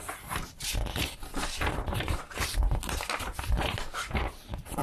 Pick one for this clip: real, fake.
real